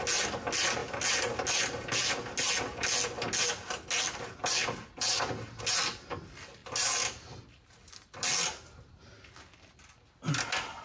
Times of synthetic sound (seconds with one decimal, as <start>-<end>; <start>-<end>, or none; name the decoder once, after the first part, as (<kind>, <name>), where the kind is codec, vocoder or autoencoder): none